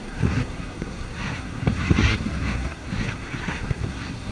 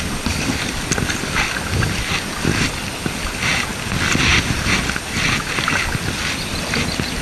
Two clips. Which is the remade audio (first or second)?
first